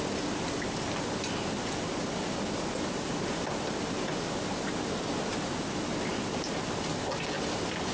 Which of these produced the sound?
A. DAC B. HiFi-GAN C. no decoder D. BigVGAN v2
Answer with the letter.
C